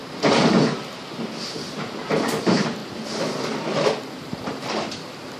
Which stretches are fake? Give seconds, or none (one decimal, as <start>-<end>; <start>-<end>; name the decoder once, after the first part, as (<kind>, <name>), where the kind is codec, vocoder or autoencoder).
none